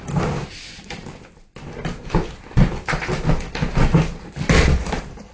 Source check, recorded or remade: recorded